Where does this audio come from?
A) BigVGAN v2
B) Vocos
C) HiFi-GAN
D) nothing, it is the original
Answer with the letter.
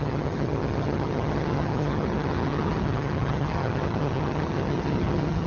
C